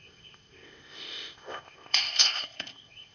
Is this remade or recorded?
remade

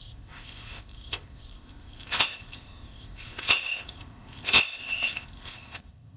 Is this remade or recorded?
remade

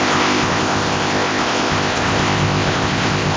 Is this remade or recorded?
remade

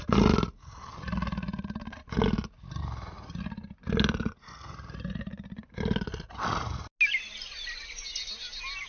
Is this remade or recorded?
recorded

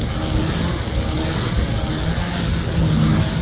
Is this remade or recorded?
recorded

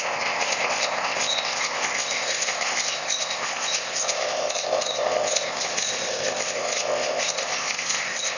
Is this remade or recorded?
remade